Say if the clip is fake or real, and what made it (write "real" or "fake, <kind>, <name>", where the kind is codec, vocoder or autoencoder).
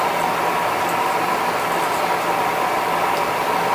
real